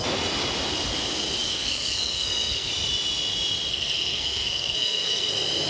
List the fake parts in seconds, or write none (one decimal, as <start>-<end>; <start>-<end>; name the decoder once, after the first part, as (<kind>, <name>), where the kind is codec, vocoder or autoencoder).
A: 1.4-2.7 (codec, SNAC); 3.7-5.3